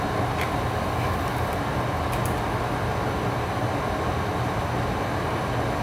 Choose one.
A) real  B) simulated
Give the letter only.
A